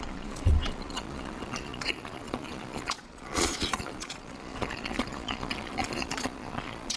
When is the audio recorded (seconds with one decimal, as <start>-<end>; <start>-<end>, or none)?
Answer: none